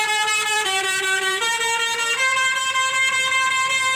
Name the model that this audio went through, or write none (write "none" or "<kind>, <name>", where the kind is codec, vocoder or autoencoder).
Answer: vocoder, BigVGAN v2